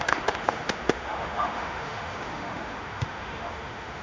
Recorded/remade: remade